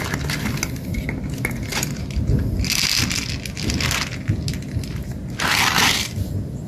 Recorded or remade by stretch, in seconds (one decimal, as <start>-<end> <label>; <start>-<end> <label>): 0.0-6.7 recorded